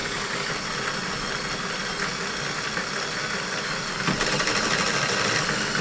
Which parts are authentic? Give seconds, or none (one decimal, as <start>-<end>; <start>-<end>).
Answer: 0.5-5.8

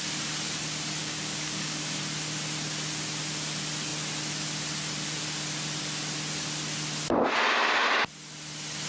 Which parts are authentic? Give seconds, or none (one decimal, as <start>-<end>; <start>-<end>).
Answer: 0.0-1.0; 2.0-8.9

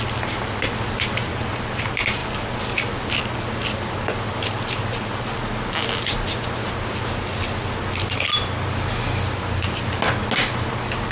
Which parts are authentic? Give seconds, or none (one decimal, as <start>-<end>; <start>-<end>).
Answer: 0.0-11.1

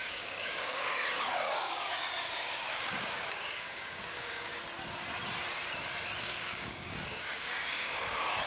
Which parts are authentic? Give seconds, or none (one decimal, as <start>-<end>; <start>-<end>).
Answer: 4.5-6.2

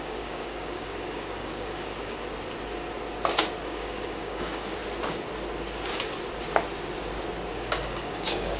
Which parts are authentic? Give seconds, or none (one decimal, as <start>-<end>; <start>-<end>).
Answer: 1.9-3.6; 4.8-7.5

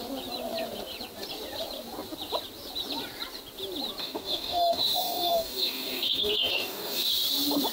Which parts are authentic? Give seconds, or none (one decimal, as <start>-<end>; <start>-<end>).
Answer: 0.0-4.0; 7.1-7.7